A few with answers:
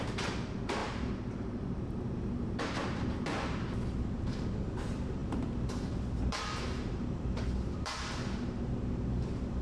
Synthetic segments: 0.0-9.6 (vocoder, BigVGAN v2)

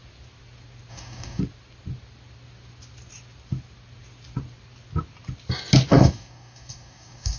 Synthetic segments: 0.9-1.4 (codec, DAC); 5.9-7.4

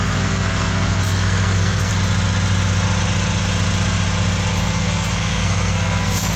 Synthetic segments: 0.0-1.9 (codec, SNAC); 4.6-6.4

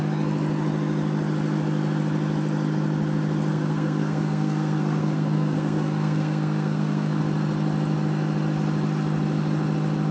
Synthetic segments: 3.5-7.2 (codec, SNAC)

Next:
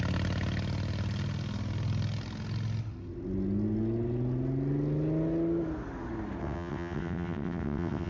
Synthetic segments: 6.4-8.1 (vocoder, WaveNeXt)

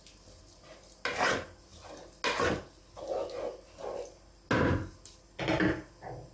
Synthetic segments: none

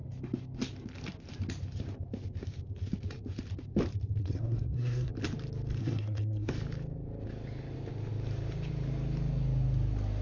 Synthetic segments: 4.2-5.1 (codec, SNAC); 5.8-6.5